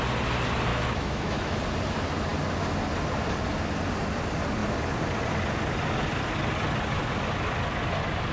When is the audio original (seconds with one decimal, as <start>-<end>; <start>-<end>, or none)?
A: 0.0-0.7; 1.6-8.3